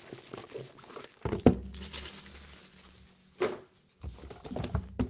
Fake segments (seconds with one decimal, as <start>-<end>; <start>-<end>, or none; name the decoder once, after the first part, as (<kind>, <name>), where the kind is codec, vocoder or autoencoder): none